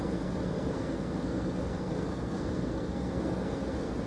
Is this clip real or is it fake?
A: fake